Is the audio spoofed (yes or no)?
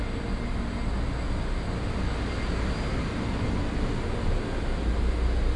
no